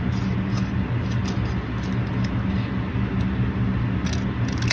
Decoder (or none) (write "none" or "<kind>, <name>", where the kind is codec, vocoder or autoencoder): none